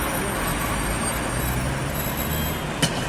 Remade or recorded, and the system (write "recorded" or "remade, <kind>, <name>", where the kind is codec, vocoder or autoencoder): recorded